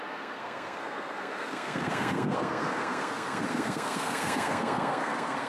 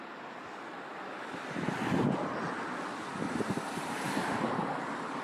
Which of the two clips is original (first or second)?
second